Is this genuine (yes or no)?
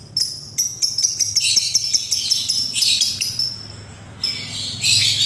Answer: yes